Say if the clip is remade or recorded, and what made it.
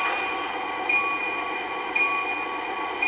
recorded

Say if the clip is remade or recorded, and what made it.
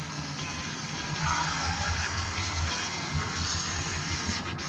remade, codec, SNAC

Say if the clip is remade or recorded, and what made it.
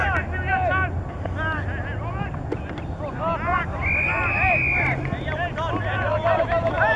recorded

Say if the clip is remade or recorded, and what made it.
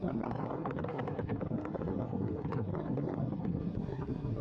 remade, codec, SNAC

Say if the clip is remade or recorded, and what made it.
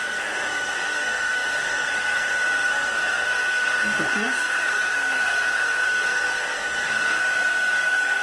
remade, codec, SNAC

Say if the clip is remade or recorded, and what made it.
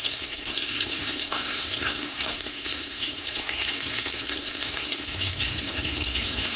remade, codec, SNAC